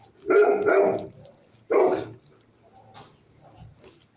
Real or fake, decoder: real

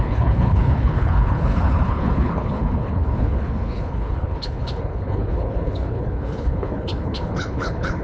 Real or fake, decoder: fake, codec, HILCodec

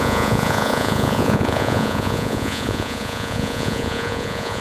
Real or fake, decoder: fake, vocoder, Vocos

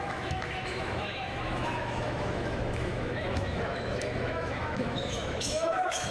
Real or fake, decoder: fake, autoencoder, DAC-VAE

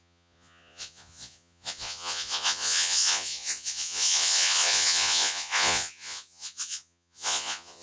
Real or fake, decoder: fake, vocoder, Vocos